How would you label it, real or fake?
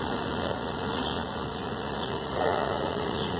fake